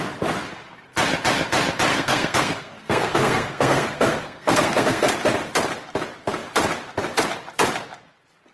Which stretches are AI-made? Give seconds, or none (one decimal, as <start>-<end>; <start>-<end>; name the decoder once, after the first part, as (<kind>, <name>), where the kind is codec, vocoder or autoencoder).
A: 1.9-5.1 (codec, SNAC)